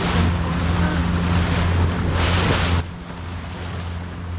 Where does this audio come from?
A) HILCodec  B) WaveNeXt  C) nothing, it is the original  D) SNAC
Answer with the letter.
C